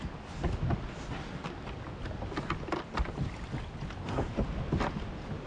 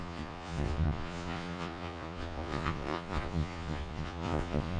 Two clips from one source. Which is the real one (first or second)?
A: first